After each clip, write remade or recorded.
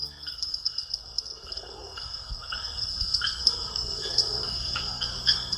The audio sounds remade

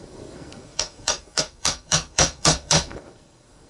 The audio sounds remade